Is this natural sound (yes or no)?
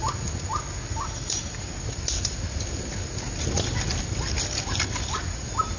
yes